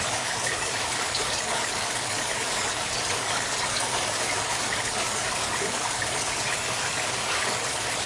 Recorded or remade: remade